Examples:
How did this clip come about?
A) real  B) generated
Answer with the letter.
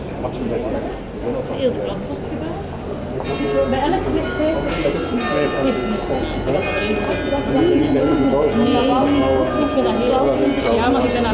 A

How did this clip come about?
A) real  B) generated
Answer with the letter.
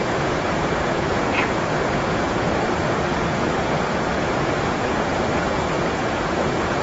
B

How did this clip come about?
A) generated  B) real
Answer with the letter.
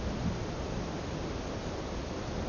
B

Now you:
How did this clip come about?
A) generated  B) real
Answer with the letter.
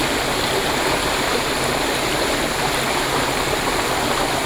B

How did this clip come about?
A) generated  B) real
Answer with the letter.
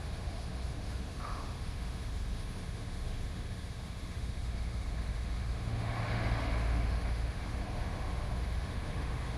A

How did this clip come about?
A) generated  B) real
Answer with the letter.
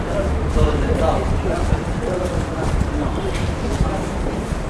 A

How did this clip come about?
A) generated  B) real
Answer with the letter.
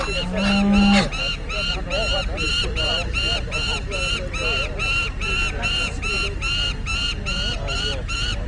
B